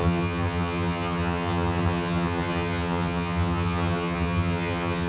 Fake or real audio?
fake